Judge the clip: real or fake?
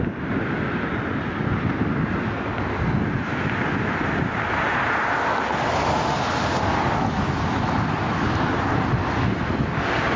real